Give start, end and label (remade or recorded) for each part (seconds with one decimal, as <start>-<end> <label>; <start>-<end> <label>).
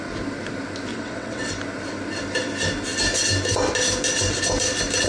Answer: 0.0-0.9 recorded; 0.9-1.5 remade; 1.5-5.1 recorded